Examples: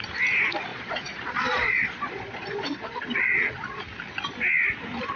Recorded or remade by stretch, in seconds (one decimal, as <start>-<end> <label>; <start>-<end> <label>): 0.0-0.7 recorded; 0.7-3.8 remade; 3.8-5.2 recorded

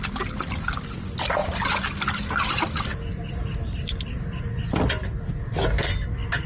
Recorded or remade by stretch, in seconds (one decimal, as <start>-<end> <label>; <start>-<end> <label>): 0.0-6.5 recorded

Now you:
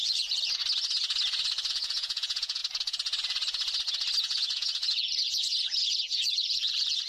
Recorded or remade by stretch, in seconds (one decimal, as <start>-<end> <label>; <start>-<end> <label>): 0.0-0.6 remade; 0.6-1.7 recorded; 1.7-2.6 remade; 2.6-4.2 recorded; 4.2-7.1 remade

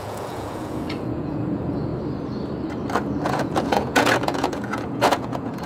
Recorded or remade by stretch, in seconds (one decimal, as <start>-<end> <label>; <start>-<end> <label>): 0.0-1.9 remade; 1.9-3.2 recorded; 3.2-5.7 remade

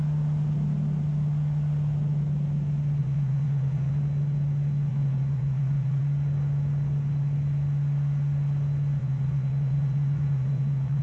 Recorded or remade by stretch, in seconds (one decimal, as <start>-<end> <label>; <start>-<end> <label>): 0.0-3.0 recorded; 3.0-3.9 remade; 3.9-4.9 recorded; 4.9-6.0 remade; 6.0-9.0 recorded; 9.0-11.0 remade

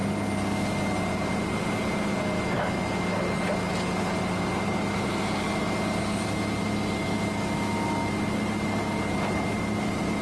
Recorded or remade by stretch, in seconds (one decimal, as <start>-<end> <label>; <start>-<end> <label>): 0.0-10.2 recorded

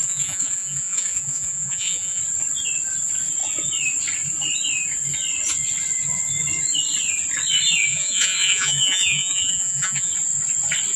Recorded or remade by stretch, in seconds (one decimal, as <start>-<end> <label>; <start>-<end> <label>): 0.0-2.2 remade; 2.2-7.9 recorded; 7.9-10.1 remade; 10.1-11.0 recorded